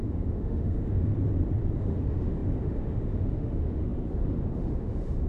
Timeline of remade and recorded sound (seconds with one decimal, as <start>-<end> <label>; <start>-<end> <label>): 0.0-1.1 remade; 1.1-1.7 recorded; 1.7-5.3 remade